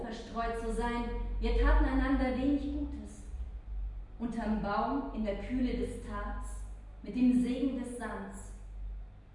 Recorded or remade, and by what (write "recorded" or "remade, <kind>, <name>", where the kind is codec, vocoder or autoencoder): recorded